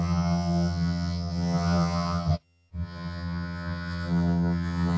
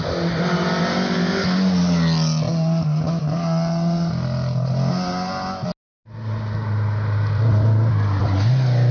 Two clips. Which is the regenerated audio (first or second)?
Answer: first